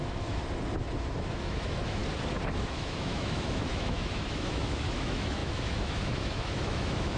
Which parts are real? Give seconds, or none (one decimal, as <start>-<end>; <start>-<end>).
0.4-1.3; 2.0-2.6